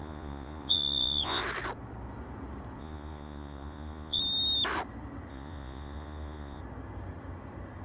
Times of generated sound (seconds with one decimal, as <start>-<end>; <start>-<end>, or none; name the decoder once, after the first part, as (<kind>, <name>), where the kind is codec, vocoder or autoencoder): 0.0-1.4 (vocoder, Vocos); 2.8-4.2; 5.3-6.6